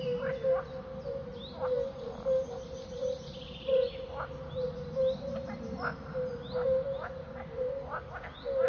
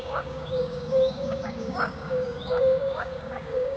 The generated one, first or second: second